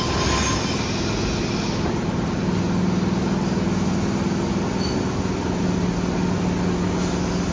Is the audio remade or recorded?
recorded